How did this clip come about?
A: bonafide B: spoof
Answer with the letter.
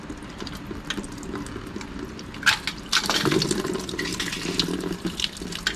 A